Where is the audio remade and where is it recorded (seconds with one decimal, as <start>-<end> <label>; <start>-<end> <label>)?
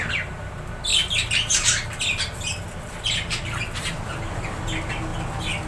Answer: 0.0-0.9 recorded; 0.9-1.6 remade; 1.6-5.7 recorded